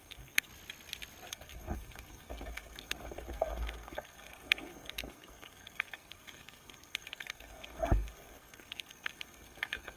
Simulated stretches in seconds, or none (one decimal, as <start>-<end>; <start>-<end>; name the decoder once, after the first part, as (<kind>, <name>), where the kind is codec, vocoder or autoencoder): 0.0-0.5 (codec, SNAC); 1.3-10.0